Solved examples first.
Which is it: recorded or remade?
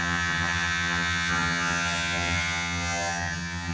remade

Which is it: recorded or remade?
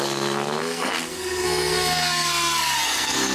remade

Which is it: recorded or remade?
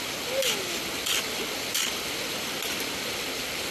recorded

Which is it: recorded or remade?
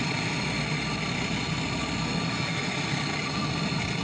recorded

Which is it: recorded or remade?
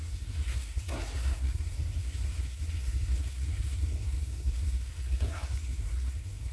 remade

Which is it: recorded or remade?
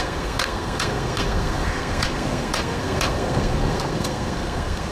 remade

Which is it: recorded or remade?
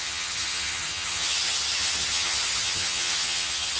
remade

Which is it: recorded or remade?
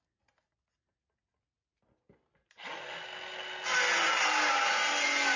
recorded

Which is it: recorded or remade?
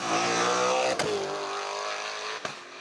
recorded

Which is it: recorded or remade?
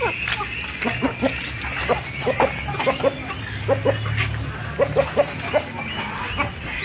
recorded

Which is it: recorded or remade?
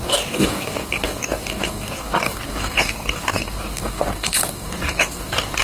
remade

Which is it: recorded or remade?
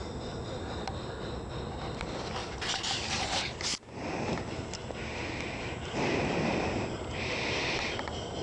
recorded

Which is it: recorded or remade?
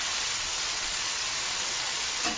remade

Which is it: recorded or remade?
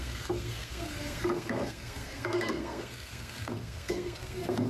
remade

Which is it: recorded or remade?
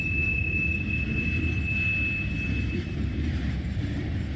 recorded